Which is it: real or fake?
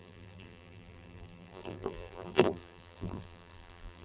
fake